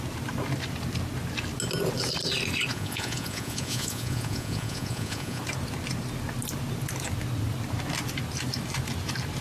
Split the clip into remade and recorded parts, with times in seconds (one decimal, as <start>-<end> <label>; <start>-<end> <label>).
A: 0.0-2.7 recorded; 2.7-5.4 remade; 5.4-9.4 recorded

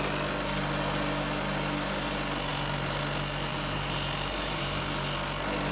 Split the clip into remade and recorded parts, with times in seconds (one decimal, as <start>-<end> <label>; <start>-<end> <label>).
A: 0.0-2.5 recorded; 2.5-3.0 remade; 3.0-3.5 recorded; 3.5-4.8 remade; 4.8-5.7 recorded